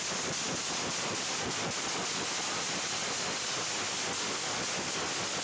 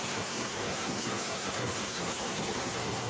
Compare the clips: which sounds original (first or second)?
first